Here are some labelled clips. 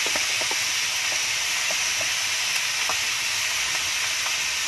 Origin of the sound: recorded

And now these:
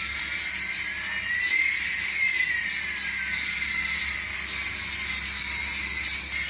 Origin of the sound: recorded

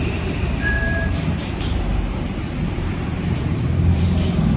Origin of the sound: remade